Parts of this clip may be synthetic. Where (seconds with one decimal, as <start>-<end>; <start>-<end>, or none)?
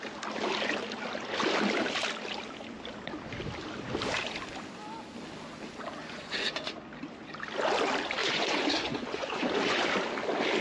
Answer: 6.0-6.7; 8.2-9.8